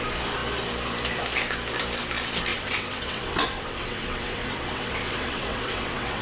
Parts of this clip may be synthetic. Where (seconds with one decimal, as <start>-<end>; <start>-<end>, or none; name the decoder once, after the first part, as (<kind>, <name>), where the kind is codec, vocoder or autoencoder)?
2.5-6.2 (vocoder, WaveNeXt)